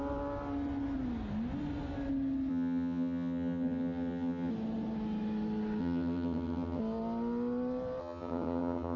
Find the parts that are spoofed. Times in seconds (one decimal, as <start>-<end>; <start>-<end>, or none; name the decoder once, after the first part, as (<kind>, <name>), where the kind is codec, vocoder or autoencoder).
2.5-4.5 (vocoder, HiFi-GAN); 5.8-6.8; 8.0-9.0